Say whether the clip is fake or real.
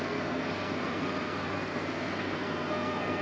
fake